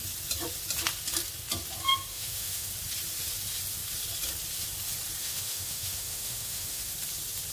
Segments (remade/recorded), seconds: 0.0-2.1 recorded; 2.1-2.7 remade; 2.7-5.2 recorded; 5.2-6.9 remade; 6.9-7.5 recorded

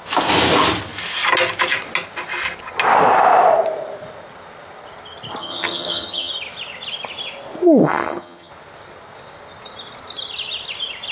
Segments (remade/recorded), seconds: 0.0-5.4 recorded; 5.4-6.3 remade; 6.3-7.8 recorded; 7.8-8.5 remade; 8.5-11.1 recorded

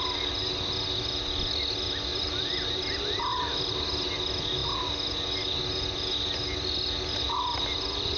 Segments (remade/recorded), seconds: 0.0-2.1 recorded; 2.1-2.8 remade; 2.8-3.3 recorded; 3.3-3.8 remade; 3.8-8.2 recorded

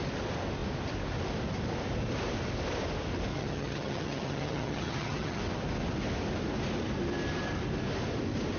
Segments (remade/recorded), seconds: 0.0-3.3 recorded; 3.3-5.4 remade; 5.4-8.6 recorded